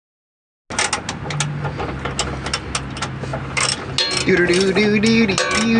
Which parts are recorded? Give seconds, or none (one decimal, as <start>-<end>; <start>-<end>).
0.0-5.8